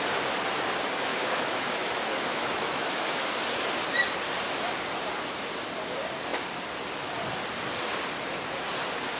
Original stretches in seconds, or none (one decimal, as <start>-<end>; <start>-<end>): 0.0-1.1; 3.4-9.2